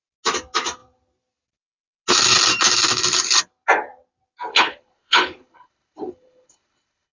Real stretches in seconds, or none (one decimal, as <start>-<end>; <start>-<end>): 0.0-4.5